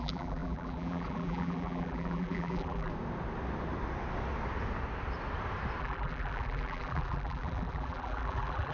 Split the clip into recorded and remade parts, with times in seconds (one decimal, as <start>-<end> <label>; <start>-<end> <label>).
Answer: 0.0-2.9 remade; 2.9-5.8 recorded; 5.8-8.7 remade